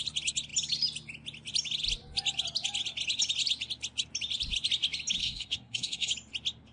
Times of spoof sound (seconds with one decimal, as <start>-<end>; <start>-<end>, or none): 5.2-6.1